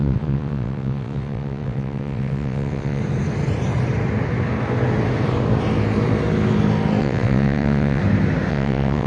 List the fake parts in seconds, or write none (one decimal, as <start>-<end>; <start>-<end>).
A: 0.0-3.0; 7.0-8.0; 8.5-9.1